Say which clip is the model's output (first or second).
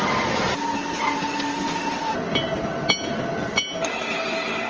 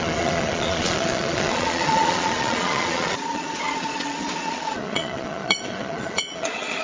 second